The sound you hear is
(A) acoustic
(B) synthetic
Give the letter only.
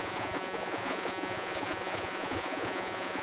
B